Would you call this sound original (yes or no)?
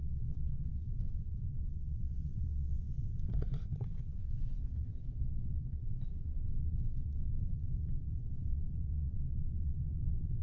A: no